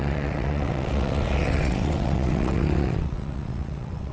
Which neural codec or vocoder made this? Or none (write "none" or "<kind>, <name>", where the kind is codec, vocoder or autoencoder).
vocoder, WaveNeXt